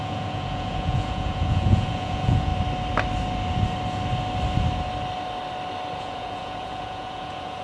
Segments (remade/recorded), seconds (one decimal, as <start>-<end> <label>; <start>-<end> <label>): 0.0-2.5 remade; 2.5-6.0 recorded; 6.0-7.6 remade